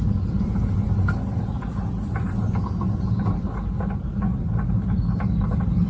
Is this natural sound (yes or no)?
yes